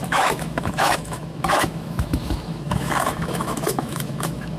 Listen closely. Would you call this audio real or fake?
fake